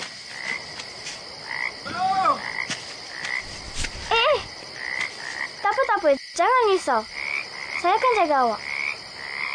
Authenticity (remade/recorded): recorded